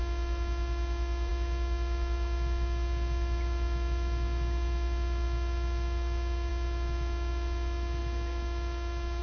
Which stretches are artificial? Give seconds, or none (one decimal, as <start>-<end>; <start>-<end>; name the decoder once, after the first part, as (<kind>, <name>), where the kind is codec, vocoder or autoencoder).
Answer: none